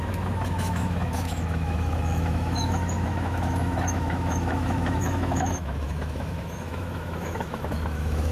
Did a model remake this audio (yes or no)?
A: yes